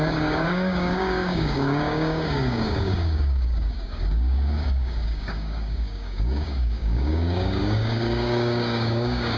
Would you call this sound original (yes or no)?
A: no